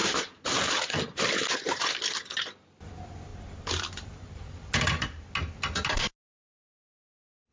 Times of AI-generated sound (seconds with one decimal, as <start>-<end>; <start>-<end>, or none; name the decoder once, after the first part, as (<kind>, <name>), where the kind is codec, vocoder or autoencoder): 0.0-1.0 (vocoder, BigVGAN v2); 3.3-4.7